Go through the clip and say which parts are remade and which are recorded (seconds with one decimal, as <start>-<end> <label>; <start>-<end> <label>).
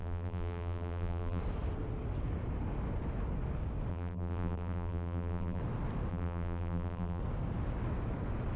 0.0-1.4 remade; 1.4-3.9 recorded; 3.9-5.6 remade; 5.6-6.1 recorded; 6.1-7.2 remade; 7.2-8.6 recorded